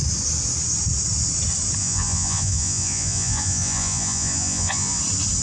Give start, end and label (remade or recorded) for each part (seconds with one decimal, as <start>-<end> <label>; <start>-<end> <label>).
0.0-1.8 recorded; 1.8-5.0 remade; 5.0-5.4 recorded